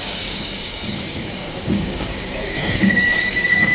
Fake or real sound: fake